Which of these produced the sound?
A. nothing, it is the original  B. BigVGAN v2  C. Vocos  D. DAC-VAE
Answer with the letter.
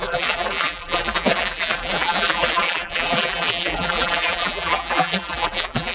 B